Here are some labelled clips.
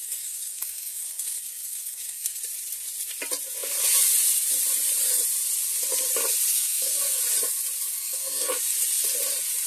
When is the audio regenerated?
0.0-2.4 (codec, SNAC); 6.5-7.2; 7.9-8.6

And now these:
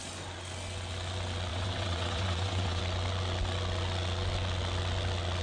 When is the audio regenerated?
1.5-2.8 (vocoder, WaveNeXt)

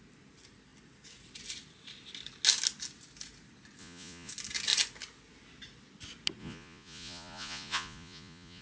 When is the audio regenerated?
3.8-4.3 (vocoder, Vocos); 6.4-8.6

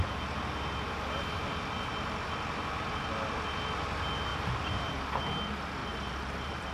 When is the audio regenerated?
4.3-4.9 (vocoder, BigVGAN v2); 5.8-6.7

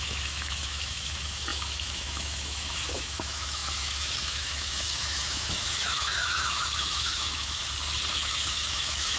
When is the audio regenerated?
0.0-7.6 (autoencoder, DAC-VAE); 8.1-9.2

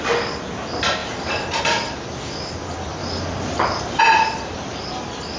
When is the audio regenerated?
none

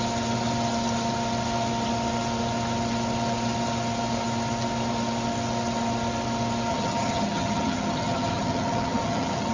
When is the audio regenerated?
6.7-9.5 (vocoder, HiFi-GAN)

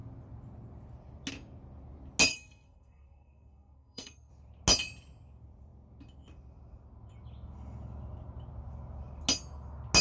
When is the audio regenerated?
2.3-4.3 (codec, SNAC)